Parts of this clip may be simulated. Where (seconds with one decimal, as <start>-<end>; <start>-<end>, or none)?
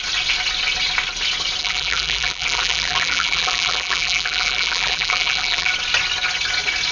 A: 1.6-5.7